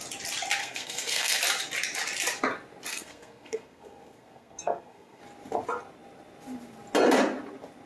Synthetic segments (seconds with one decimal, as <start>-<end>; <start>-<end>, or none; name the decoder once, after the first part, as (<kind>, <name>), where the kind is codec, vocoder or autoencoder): 0.6-1.4 (codec, SNAC); 2.9-5.2